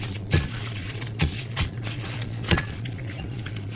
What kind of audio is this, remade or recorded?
remade